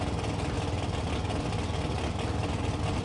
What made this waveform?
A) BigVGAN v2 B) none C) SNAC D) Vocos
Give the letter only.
B